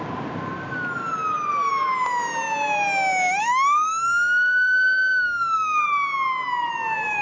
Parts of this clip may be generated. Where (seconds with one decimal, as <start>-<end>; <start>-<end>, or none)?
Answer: 3.4-5.8